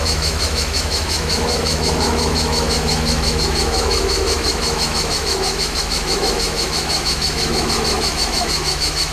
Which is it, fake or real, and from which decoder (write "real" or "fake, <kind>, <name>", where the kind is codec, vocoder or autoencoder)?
fake, autoencoder, DAC-VAE